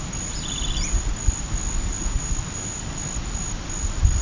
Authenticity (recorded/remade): recorded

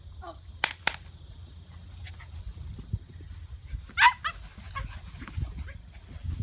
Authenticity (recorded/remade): recorded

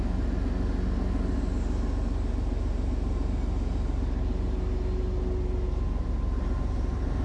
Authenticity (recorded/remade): recorded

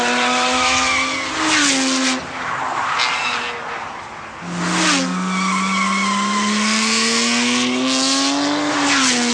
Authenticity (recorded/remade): recorded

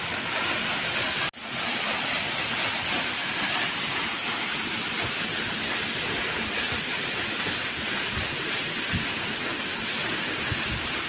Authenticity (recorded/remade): recorded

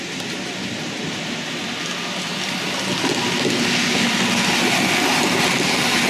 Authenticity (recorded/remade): recorded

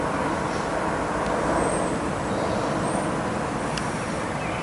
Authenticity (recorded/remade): recorded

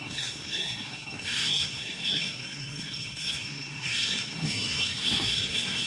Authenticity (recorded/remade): remade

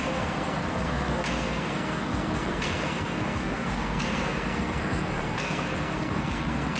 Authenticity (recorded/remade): remade